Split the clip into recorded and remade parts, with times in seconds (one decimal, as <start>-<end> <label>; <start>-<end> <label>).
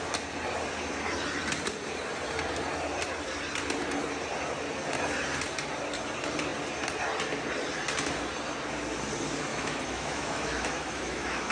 0.0-9.5 recorded; 9.5-11.5 remade